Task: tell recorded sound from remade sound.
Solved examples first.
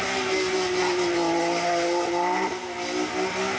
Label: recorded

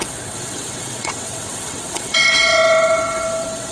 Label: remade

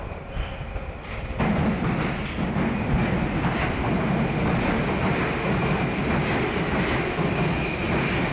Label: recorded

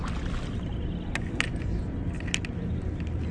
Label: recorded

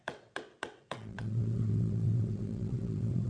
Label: remade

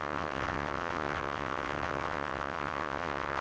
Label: remade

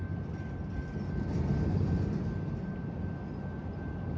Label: recorded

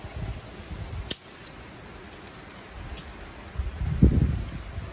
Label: recorded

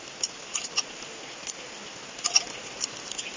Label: recorded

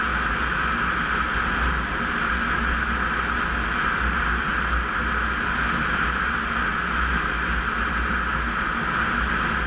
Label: recorded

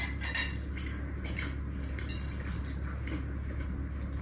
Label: recorded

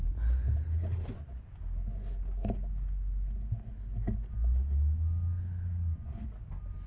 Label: recorded